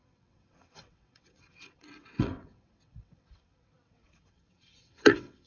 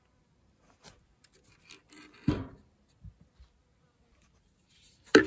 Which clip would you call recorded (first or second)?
second